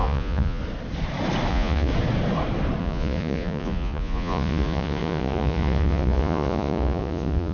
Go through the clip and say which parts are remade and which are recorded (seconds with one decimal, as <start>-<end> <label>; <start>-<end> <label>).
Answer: 0.0-0.6 remade; 0.6-1.5 recorded; 1.5-1.9 remade; 1.9-2.8 recorded; 2.8-7.5 remade